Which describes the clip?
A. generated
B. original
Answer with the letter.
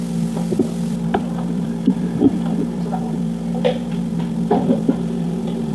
A